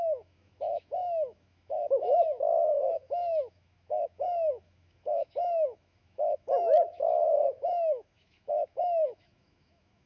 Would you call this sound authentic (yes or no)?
no